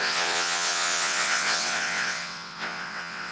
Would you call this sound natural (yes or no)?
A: no